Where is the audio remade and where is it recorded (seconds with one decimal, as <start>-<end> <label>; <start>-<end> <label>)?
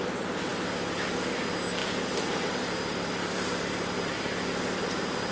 0.0-0.5 recorded; 0.5-1.4 remade; 1.4-1.8 recorded; 1.8-5.3 remade